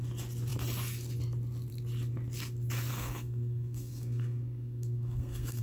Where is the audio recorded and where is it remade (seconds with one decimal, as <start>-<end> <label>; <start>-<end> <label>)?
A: 0.0-2.9 recorded; 2.9-5.6 remade